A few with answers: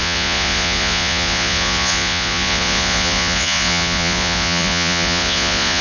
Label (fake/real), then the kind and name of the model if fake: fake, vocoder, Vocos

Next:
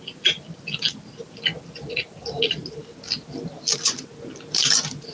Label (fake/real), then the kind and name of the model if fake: real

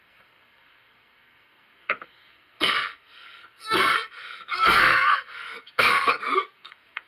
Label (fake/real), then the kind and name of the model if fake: fake, codec, SNAC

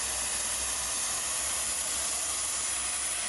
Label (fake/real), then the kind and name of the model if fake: real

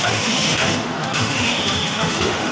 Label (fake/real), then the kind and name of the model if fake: fake, autoencoder, DAC-VAE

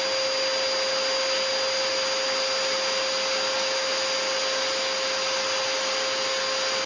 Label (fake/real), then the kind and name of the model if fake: real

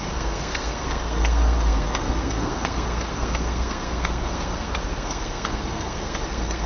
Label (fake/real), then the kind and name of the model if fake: fake, codec, SNAC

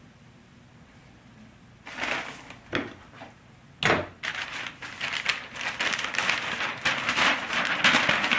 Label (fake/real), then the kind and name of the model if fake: real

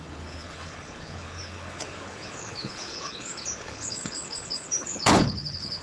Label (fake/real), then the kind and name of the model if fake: fake, codec, HILCodec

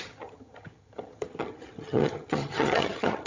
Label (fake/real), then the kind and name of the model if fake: fake, vocoder, HiFi-GAN